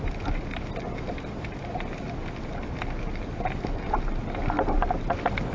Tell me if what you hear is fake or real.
real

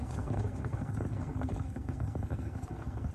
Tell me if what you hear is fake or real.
fake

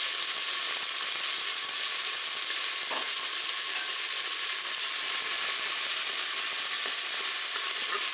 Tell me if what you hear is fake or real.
real